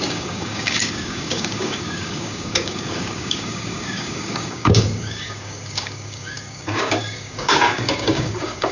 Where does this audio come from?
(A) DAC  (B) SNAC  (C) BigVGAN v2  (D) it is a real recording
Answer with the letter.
A